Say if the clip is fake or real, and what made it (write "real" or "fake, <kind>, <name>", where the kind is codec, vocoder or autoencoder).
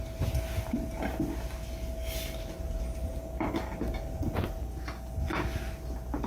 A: real